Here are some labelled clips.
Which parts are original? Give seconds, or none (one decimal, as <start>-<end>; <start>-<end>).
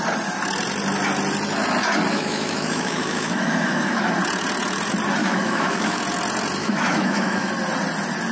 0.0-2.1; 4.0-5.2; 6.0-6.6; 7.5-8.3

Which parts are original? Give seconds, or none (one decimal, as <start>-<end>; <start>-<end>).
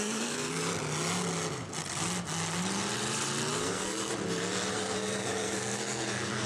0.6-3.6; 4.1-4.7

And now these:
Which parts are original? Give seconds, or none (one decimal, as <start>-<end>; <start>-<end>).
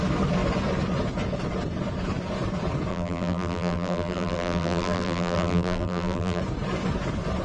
0.0-2.9; 6.4-7.4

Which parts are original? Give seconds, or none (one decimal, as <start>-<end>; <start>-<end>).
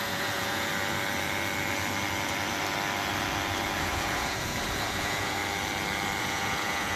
0.7-3.8; 5.4-6.2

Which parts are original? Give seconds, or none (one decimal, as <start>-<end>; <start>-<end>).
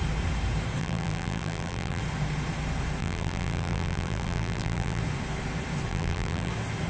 0.0-0.8; 2.0-3.0; 5.0-5.9; 6.5-6.9